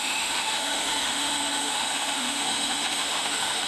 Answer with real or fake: fake